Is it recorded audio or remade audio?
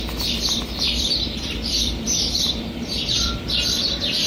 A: remade